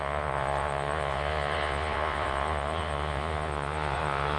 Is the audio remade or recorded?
remade